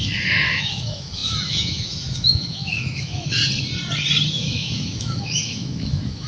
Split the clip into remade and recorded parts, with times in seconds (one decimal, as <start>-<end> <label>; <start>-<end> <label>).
0.0-3.4 remade; 3.4-4.3 recorded; 4.3-6.3 remade